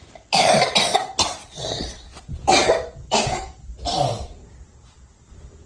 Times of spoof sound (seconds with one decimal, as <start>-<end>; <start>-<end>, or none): 1.4-2.1